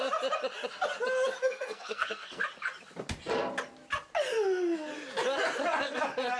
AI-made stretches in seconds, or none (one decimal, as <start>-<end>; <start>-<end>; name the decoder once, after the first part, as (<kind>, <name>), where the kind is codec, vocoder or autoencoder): 1.4-2.4 (codec, SNAC)